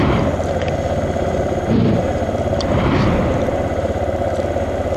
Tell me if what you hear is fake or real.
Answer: real